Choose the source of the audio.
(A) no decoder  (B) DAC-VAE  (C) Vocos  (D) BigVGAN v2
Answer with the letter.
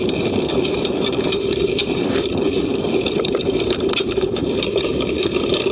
D